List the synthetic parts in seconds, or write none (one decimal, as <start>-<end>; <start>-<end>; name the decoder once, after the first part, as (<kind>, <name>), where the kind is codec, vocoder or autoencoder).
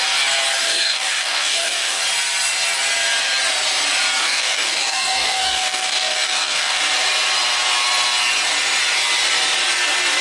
0.6-2.0 (codec, DAC); 4.2-6.8